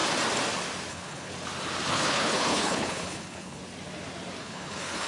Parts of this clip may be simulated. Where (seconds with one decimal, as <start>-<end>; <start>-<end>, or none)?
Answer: 0.9-1.3; 1.9-3.6; 4.4-5.1